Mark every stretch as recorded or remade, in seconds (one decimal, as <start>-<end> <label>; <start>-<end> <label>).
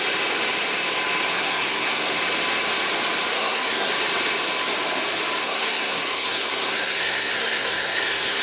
0.0-1.3 recorded; 1.3-2.2 remade; 2.2-3.3 recorded; 3.3-3.9 remade; 3.9-5.4 recorded; 5.4-8.4 remade